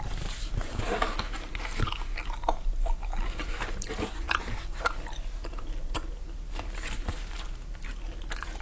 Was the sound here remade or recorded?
recorded